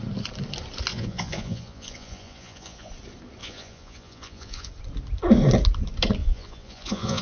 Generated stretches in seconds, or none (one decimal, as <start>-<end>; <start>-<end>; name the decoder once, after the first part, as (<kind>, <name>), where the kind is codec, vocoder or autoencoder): 0.9-2.9 (vocoder, Vocos); 3.4-4.7; 6.2-7.2